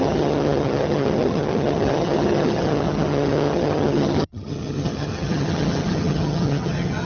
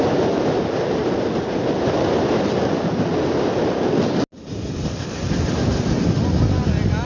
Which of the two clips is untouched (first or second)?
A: second